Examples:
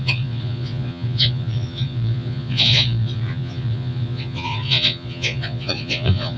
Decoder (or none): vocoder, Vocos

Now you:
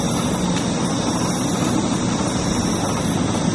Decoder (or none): none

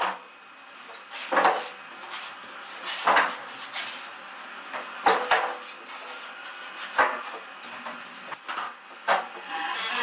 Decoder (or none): none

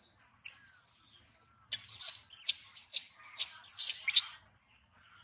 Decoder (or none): none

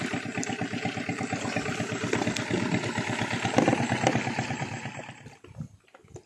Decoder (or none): none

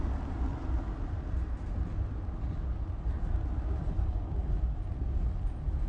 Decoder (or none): none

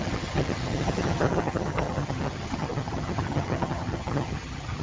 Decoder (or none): vocoder, HiFi-GAN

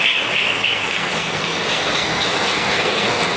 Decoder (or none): codec, SNAC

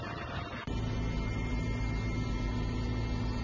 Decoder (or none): none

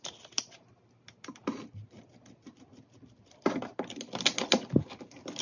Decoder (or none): none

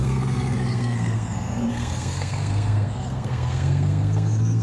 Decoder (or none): codec, SNAC